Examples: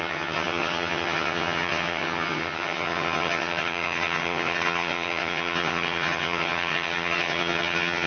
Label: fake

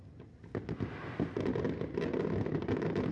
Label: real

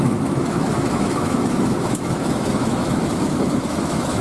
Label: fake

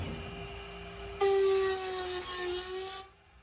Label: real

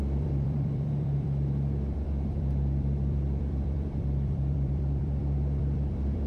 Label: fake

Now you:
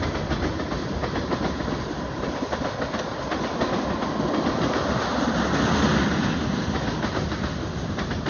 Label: real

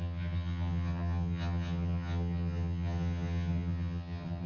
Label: fake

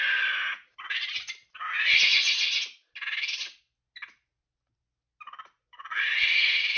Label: real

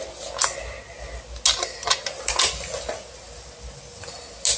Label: real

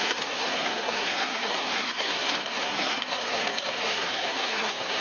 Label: fake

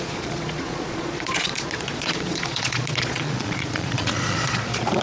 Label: fake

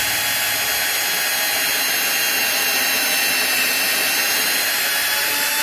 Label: real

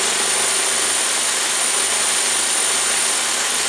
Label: real